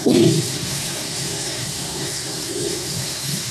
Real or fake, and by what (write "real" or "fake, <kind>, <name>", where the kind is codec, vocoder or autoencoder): fake, codec, SNAC